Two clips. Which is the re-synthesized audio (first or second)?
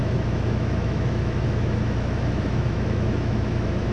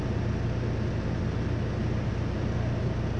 first